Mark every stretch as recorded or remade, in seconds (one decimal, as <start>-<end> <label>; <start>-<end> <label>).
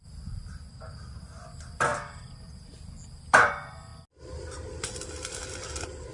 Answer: 0.0-6.1 recorded